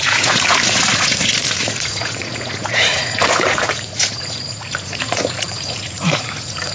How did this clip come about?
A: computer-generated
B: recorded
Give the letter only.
A